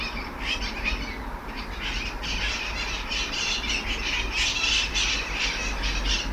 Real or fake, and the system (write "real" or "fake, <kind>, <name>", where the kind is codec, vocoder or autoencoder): real